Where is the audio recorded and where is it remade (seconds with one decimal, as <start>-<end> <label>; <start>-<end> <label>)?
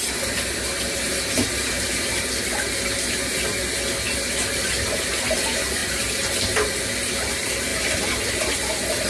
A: 0.0-1.0 recorded; 1.0-2.3 remade; 2.3-9.1 recorded